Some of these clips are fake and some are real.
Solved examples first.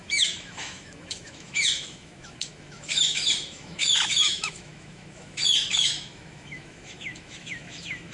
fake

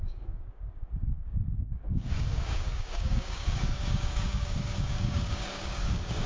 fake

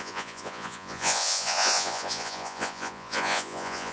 fake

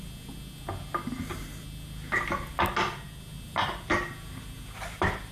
real